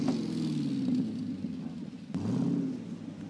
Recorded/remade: recorded